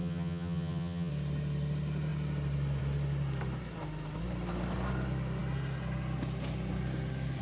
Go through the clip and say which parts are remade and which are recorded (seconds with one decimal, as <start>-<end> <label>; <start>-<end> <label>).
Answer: 0.0-1.1 remade; 1.1-7.4 recorded